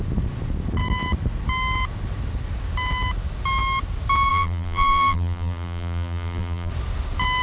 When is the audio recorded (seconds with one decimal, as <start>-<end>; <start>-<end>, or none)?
0.0-4.3; 6.7-7.4